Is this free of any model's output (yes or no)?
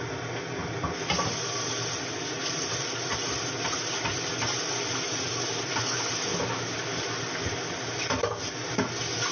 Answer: yes